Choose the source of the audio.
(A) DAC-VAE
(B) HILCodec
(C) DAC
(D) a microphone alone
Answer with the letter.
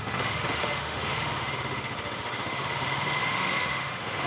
A